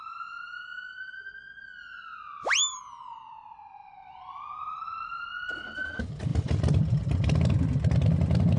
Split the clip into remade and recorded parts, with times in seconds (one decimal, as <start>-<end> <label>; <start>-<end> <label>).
0.0-3.8 recorded; 3.8-5.8 remade; 5.8-6.3 recorded; 6.3-7.4 remade; 7.4-8.6 recorded